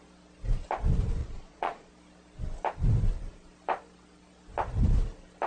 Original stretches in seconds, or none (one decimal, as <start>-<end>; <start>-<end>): 0.0-1.2; 1.9-5.5